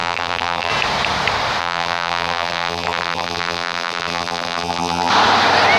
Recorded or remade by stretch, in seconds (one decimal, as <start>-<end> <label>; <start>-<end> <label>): 0.0-0.7 remade; 0.7-1.6 recorded; 1.6-5.1 remade; 5.1-5.8 recorded